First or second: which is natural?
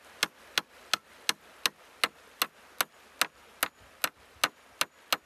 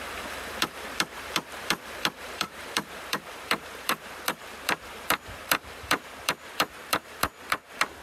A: first